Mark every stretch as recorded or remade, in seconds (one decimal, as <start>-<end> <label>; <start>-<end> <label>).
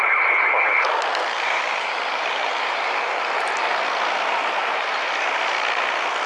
0.0-1.1 recorded; 1.1-3.7 remade; 3.7-4.6 recorded; 4.6-5.1 remade; 5.1-6.3 recorded